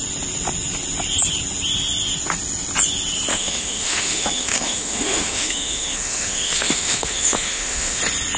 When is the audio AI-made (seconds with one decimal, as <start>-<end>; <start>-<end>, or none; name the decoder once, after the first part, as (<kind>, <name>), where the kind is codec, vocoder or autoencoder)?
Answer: 3.3-8.0 (autoencoder, DAC-VAE)